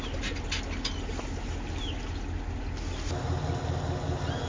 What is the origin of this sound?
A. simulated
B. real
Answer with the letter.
B